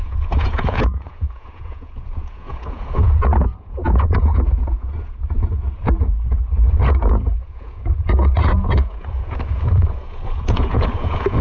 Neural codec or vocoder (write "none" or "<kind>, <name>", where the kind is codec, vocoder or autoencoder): vocoder, Vocos